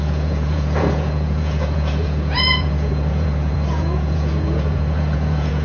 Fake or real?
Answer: fake